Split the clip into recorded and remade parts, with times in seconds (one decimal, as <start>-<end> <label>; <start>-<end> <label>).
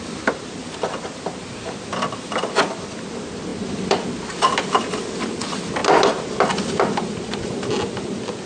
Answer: 0.0-8.5 recorded